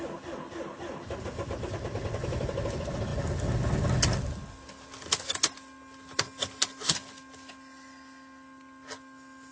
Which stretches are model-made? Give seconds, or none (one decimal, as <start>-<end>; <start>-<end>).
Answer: none